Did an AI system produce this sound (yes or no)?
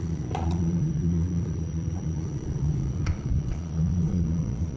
yes